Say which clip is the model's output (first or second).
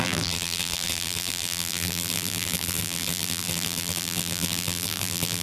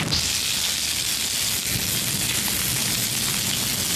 first